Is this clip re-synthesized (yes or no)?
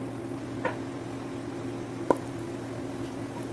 no